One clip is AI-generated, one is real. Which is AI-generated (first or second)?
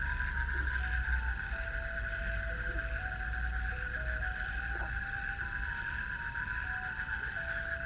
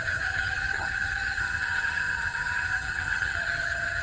second